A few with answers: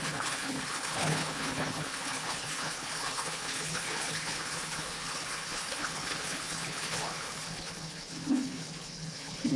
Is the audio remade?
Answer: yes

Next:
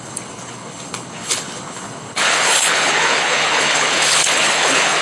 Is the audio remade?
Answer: yes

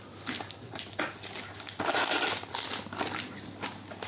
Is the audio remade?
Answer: no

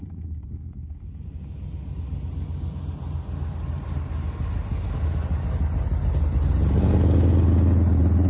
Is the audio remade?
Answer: no